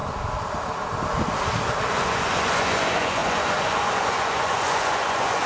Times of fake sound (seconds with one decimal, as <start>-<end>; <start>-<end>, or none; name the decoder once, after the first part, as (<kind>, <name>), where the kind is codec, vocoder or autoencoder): 1.9-5.5 (vocoder, Vocos)